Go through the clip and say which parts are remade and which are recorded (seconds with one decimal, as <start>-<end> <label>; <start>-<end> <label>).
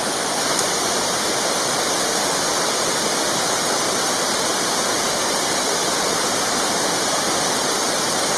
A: 0.0-1.0 remade; 1.0-8.4 recorded